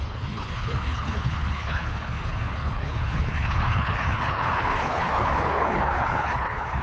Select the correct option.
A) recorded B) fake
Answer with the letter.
B